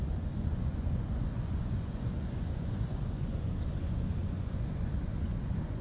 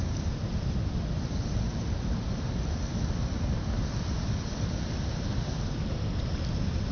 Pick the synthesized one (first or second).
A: first